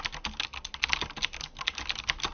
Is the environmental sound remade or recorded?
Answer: recorded